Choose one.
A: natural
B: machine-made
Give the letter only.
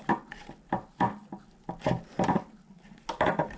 A